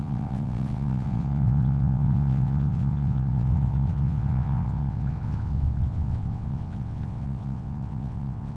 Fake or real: fake